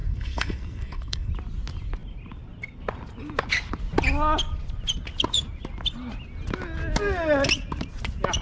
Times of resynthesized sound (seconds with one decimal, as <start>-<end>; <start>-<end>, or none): 0.0-1.3